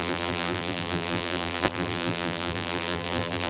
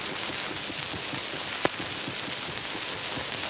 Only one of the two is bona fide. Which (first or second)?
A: second